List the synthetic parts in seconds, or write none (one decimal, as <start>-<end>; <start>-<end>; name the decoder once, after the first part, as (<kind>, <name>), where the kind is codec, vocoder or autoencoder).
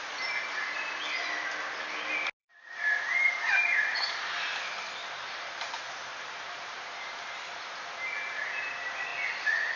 2.4-4.3 (vocoder, BigVGAN v2); 5.0-7.9